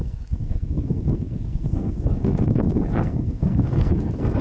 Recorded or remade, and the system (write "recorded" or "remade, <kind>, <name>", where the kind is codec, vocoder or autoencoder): remade, codec, SNAC